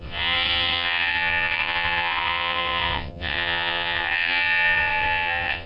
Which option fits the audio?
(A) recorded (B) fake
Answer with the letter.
B